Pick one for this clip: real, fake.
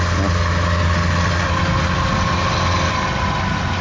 real